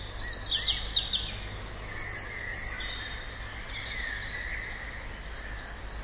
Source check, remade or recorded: recorded